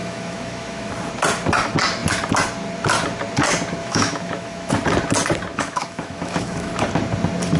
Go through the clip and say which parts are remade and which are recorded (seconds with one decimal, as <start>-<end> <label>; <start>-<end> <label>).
0.0-0.9 remade; 0.9-3.8 recorded; 3.8-4.7 remade; 4.7-5.5 recorded; 5.5-6.7 remade; 6.7-7.6 recorded